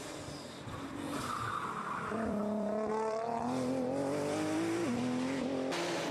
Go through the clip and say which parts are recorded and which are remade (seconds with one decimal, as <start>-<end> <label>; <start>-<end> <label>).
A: 0.0-4.9 remade; 4.9-6.1 recorded